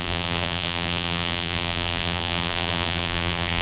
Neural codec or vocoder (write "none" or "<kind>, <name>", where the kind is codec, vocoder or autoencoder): vocoder, BigVGAN v2